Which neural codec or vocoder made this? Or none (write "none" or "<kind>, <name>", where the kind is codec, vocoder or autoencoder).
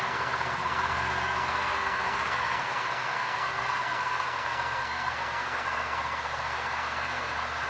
codec, SNAC